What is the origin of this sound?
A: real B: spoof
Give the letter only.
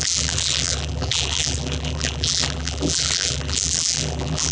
B